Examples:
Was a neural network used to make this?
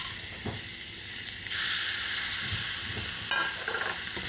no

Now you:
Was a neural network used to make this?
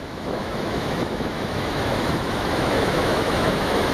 yes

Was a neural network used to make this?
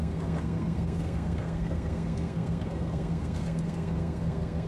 yes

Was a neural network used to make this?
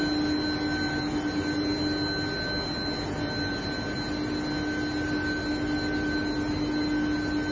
no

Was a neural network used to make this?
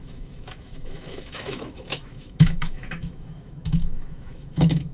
yes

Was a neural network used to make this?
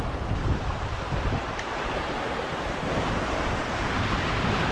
yes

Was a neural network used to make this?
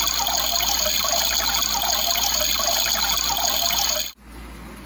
no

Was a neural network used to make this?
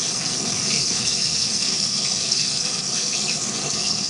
yes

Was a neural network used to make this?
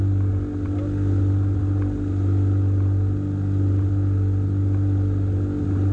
no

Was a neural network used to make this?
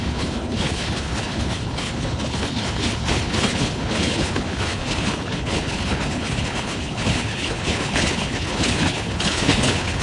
yes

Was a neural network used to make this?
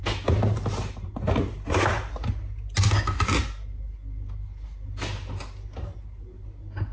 no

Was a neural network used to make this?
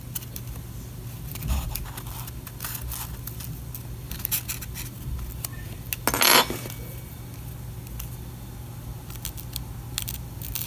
no